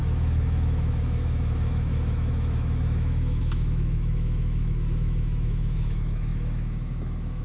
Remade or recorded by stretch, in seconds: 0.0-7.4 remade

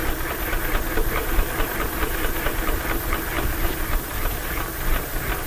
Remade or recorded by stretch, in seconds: 0.0-1.1 remade; 1.1-5.5 recorded

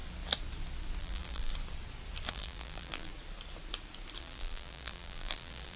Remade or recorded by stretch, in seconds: 0.0-1.0 recorded; 1.0-1.5 remade; 1.5-2.3 recorded; 2.3-3.1 remade; 3.1-4.2 recorded; 4.2-5.8 remade

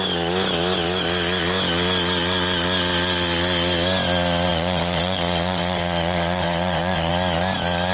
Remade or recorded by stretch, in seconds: 0.0-4.5 recorded; 4.5-7.1 remade; 7.1-7.9 recorded